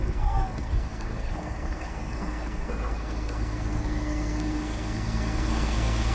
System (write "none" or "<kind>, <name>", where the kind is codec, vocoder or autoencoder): codec, SNAC